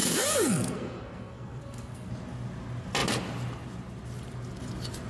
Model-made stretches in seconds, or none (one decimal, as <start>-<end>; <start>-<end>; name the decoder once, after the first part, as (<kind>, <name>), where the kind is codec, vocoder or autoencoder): 0.0-2.1 (codec, SNAC)